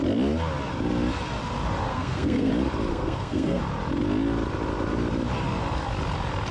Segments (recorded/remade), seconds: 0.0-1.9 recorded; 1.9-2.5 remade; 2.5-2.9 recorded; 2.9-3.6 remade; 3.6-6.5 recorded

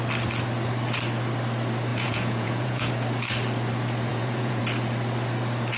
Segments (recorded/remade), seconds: 0.0-1.9 recorded; 1.9-2.9 remade; 2.9-4.1 recorded; 4.1-4.6 remade; 4.6-5.8 recorded

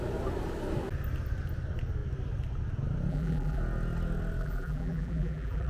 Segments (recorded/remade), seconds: 0.0-3.1 recorded; 3.1-3.6 remade; 3.6-4.4 recorded; 4.4-5.7 remade

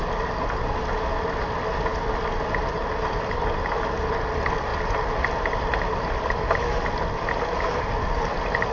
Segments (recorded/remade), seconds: 0.0-8.7 recorded

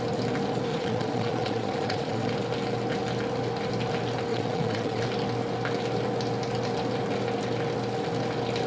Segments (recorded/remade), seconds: 0.0-0.7 recorded; 0.7-2.3 remade; 2.3-4.3 recorded; 4.3-5.0 remade; 5.0-8.7 recorded